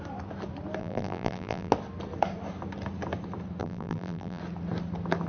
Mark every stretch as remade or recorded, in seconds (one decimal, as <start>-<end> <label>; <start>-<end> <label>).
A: 0.0-0.8 recorded; 0.8-1.7 remade; 1.7-3.6 recorded; 3.6-4.4 remade; 4.4-5.3 recorded